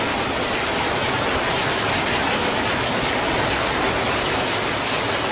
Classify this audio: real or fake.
real